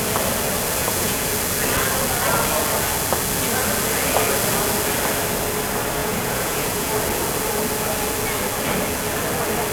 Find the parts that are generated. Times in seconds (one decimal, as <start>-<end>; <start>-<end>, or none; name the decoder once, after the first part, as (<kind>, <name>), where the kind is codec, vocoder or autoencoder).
0.8-1.3 (vocoder, Vocos); 6.0-6.9